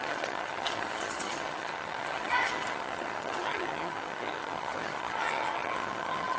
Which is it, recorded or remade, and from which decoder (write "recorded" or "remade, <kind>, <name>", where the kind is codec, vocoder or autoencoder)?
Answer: remade, vocoder, HiFi-GAN